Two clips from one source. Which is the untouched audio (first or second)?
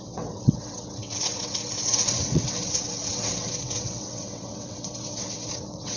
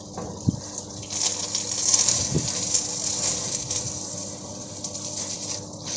second